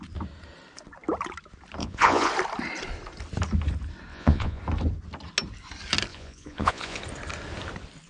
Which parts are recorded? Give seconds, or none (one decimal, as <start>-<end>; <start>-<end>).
0.0-1.8; 2.3-4.1; 4.6-6.1; 7.0-8.1